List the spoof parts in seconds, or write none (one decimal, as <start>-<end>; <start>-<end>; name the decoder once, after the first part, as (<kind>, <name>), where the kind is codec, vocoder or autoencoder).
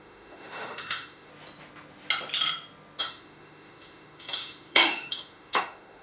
0.0-1.3 (autoencoder, DAC-VAE); 3.0-6.0